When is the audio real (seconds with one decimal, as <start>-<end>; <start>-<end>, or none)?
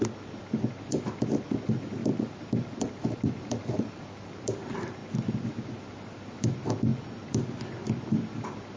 0.0-2.0; 4.4-8.8